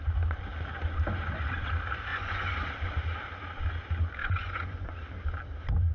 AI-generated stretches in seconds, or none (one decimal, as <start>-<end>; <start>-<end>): 2.1-2.7; 4.2-4.9